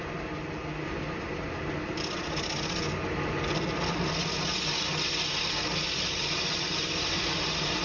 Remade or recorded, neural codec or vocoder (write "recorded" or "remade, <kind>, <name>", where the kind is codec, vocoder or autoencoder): recorded